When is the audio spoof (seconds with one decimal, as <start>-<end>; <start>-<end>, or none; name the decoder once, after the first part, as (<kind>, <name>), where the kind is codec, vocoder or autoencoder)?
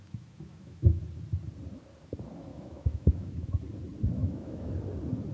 0.0-1.0 (autoencoder, DAC-VAE); 2.5-3.6; 4.2-4.7